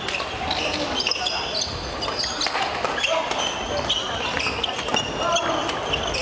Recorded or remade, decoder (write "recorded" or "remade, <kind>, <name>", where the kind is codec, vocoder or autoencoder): recorded